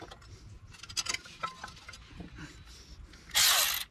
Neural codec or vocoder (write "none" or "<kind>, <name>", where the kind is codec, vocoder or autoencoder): none